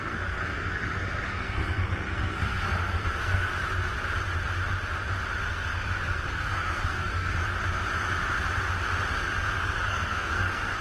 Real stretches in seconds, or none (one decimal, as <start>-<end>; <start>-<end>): 3.5-5.4; 7.4-9.1